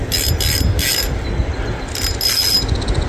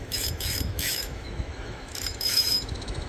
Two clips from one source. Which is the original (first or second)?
first